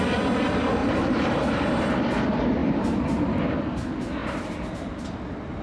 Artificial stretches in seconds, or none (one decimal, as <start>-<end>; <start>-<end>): 0.8-1.9; 2.6-3.4; 4.2-5.0